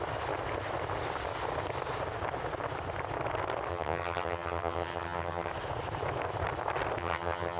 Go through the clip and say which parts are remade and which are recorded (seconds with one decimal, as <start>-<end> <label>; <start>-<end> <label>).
0.0-3.7 recorded; 3.7-5.5 remade; 5.5-7.0 recorded; 7.0-7.6 remade